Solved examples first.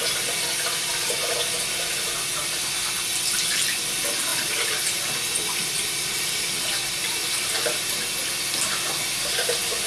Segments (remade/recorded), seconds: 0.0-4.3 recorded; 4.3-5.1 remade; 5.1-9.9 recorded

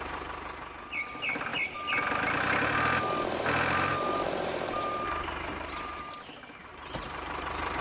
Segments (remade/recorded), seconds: 0.0-3.9 recorded; 3.9-6.0 remade; 6.0-6.7 recorded; 6.7-7.8 remade

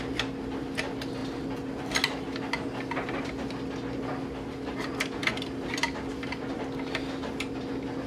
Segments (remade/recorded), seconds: 0.0-8.1 recorded

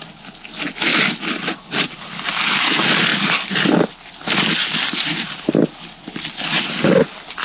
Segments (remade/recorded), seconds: 0.0-4.6 recorded; 4.6-7.0 remade; 7.0-7.4 recorded

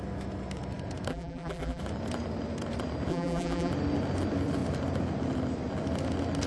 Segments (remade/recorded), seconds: 0.0-1.1 recorded; 1.1-1.8 remade; 1.8-3.1 recorded; 3.1-3.7 remade; 3.7-6.5 recorded

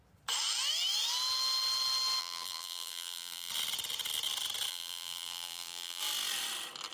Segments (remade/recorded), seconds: 0.0-2.2 recorded; 2.2-3.5 remade; 3.5-4.7 recorded; 4.7-6.0 remade; 6.0-6.9 recorded

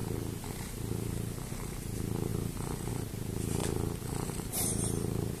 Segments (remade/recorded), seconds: 0.0-1.5 recorded; 1.5-3.6 remade; 3.6-4.1 recorded; 4.1-5.4 remade

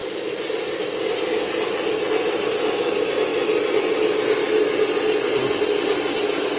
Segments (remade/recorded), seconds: 0.0-6.6 recorded